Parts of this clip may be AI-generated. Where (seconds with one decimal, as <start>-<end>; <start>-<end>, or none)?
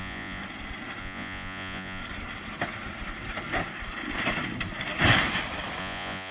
0.0-0.4; 1.0-2.0; 5.8-6.3